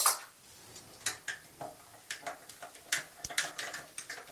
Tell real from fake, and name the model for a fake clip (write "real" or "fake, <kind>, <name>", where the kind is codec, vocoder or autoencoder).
real